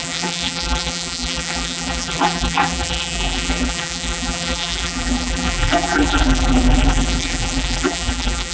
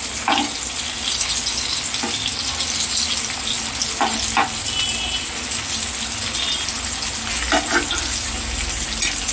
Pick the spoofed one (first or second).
first